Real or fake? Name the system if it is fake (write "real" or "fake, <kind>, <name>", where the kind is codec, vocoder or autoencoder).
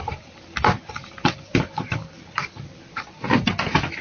fake, vocoder, BigVGAN v2